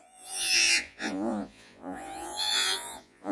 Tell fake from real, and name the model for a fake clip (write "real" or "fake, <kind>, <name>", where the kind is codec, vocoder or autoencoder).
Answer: fake, vocoder, Vocos